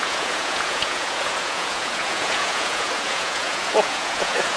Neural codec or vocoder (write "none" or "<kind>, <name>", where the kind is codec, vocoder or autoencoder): vocoder, Vocos